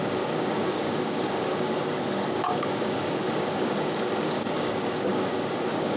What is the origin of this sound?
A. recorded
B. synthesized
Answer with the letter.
B